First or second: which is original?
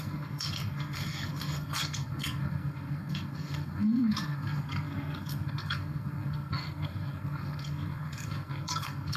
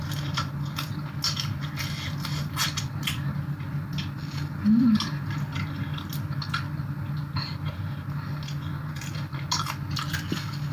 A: second